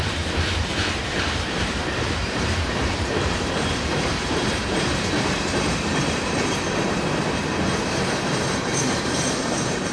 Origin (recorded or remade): remade